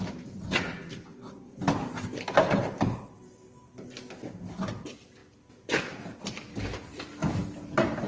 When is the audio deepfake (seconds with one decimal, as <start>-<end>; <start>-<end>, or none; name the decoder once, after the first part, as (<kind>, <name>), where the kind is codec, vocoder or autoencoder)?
none